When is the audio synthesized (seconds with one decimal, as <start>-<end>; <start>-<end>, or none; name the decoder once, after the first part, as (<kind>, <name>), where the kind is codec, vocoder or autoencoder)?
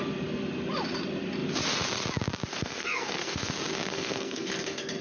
2.5-3.5 (codec, SNAC); 3.9-5.0